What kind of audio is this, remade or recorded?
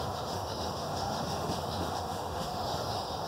remade